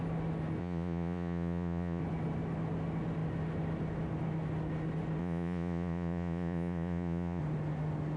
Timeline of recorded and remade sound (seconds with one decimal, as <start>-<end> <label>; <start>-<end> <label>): 0.0-0.6 recorded; 0.6-2.0 remade; 2.0-5.2 recorded; 5.2-7.4 remade; 7.4-8.2 recorded